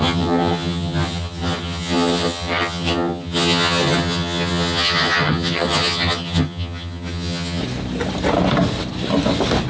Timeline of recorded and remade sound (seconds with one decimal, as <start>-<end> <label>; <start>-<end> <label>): 0.0-7.6 remade; 7.6-9.7 recorded